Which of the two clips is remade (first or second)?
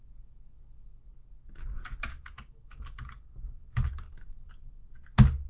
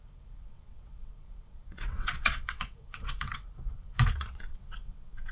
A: second